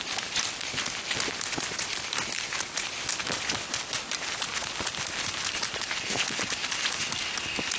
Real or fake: real